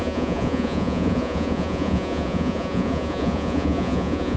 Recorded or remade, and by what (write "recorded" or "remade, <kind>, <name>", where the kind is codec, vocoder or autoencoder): remade, vocoder, Vocos